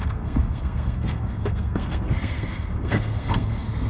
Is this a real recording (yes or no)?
no